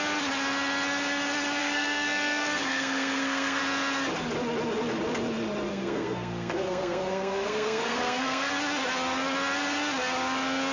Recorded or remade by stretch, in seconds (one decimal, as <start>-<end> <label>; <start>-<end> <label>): 0.0-1.6 recorded; 1.6-3.6 remade; 3.6-5.7 recorded; 5.7-8.5 remade; 8.5-10.7 recorded